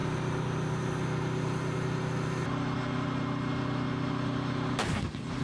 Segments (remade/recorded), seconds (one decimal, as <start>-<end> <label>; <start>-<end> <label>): 0.0-5.4 recorded